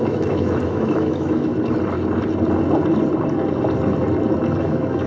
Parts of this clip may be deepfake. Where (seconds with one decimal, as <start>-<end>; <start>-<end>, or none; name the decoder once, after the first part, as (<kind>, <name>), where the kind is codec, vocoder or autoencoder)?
0.0-1.5 (autoencoder, DAC-VAE); 4.6-5.1